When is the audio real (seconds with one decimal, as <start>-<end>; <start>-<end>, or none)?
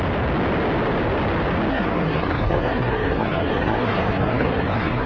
0.0-1.7